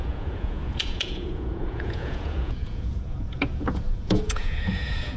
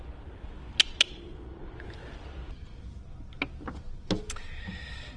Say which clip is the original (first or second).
second